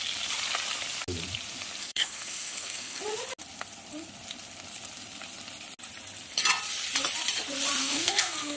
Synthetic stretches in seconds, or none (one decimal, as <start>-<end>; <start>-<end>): 1.8-3.0; 7.8-8.6

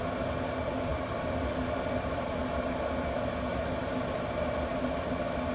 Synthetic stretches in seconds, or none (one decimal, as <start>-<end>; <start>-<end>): 0.9-3.0

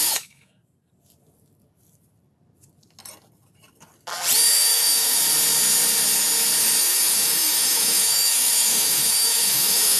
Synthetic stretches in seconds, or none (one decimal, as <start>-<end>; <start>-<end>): 0.0-0.6; 4.5-5.2; 6.8-10.0